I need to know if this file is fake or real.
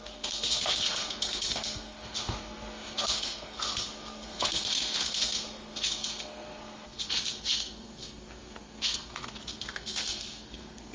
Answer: fake